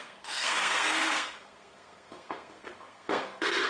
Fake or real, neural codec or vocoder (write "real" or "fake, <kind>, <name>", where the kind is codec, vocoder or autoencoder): fake, codec, SNAC